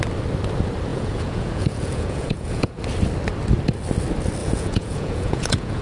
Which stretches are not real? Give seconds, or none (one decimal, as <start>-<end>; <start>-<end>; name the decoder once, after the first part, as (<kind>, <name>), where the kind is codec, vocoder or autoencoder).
0.9-2.8 (vocoder, Vocos); 4.4-5.8